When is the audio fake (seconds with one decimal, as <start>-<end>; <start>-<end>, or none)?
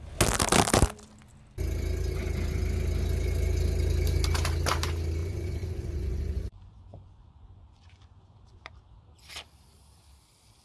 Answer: 5.2-8.7